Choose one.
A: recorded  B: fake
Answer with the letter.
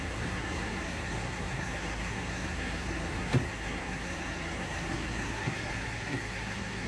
B